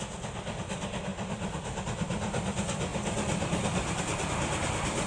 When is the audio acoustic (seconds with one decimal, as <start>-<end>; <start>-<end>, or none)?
0.0-5.1